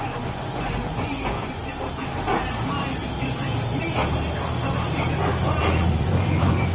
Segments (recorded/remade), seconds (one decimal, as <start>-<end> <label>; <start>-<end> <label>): 0.0-1.6 remade; 1.6-5.6 recorded; 5.6-6.7 remade